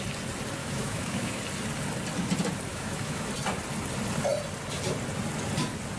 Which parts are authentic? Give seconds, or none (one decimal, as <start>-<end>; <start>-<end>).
0.0-0.6; 1.4-2.7; 3.3-6.0